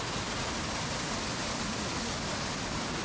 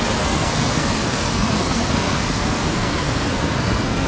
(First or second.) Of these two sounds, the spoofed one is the second